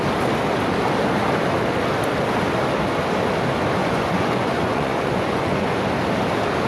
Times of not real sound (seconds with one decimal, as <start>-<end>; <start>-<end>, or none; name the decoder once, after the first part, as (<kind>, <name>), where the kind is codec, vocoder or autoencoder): 3.8-5.8 (vocoder, Vocos)

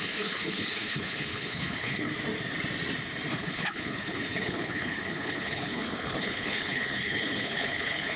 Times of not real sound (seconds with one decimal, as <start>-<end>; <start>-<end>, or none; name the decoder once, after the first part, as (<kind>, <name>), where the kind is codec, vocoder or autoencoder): 0.0-2.1 (codec, HILCodec); 3.3-8.2

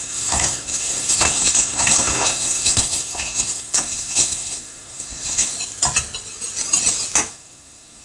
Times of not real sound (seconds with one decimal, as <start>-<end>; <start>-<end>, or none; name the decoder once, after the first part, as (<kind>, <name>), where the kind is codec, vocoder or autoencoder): 0.0-5.5 (codec, SNAC); 7.3-8.0

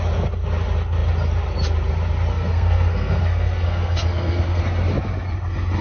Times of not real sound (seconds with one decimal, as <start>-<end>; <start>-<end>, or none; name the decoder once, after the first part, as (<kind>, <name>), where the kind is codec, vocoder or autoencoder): 2.3-4.6 (codec, SNAC)